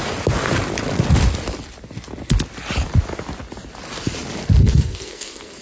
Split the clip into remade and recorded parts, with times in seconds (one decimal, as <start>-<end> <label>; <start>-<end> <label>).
0.0-4.6 recorded; 4.6-5.6 remade